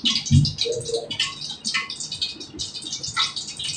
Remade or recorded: recorded